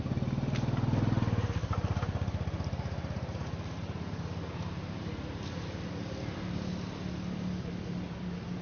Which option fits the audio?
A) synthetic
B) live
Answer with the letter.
B